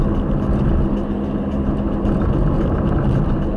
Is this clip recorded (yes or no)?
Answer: yes